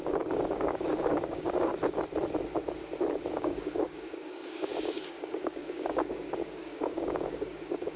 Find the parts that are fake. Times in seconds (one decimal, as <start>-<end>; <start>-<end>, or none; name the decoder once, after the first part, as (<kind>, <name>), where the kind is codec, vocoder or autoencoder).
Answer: 0.0-1.7 (codec, DAC); 3.3-8.0